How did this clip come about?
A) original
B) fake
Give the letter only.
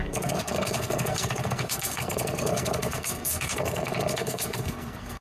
B